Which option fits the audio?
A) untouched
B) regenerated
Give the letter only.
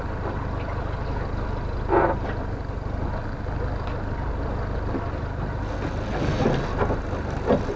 A